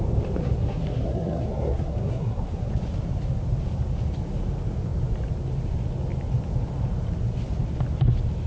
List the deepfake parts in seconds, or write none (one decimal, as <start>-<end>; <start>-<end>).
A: 0.4-2.7